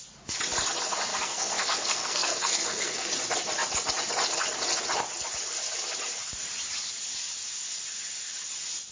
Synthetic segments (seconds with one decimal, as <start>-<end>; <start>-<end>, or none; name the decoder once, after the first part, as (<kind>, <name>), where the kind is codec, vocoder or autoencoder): 1.1-3.1 (codec, SNAC)